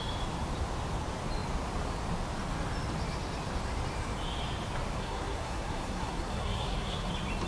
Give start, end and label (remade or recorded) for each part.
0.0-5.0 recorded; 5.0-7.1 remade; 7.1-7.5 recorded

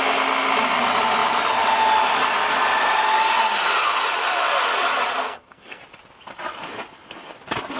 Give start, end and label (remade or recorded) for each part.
0.0-5.2 recorded; 5.2-5.8 remade; 5.8-7.8 recorded

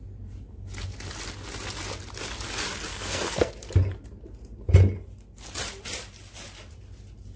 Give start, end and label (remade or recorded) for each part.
0.0-2.9 recorded; 2.9-3.5 remade; 3.5-7.4 recorded

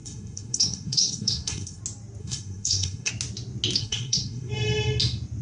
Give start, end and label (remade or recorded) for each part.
0.0-1.8 remade; 1.8-2.2 recorded; 2.2-3.1 remade; 3.1-3.8 recorded; 3.8-4.5 remade; 4.5-5.4 recorded

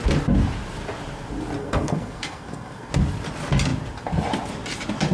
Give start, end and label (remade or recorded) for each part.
0.0-1.6 recorded; 1.6-2.9 remade; 2.9-5.1 recorded

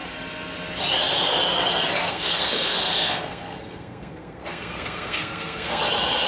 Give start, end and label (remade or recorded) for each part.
0.0-2.0 recorded; 2.0-5.8 remade; 5.8-6.3 recorded

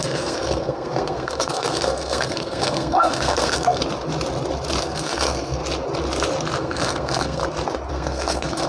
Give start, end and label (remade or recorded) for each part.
0.0-3.8 remade; 3.8-4.8 recorded; 4.8-5.6 remade; 5.6-6.6 recorded; 6.6-7.4 remade; 7.4-7.9 recorded; 7.9-8.7 remade